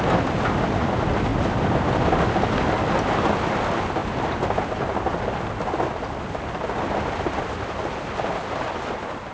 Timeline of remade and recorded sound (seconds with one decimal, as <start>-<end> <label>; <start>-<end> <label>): 0.0-9.3 recorded